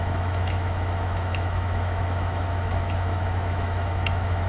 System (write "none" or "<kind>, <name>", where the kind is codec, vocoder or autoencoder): autoencoder, DAC-VAE